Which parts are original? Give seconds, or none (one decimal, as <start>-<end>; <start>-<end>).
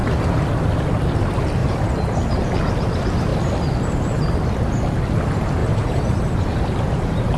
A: 0.5-1.6; 2.3-5.6